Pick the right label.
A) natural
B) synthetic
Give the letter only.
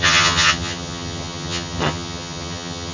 B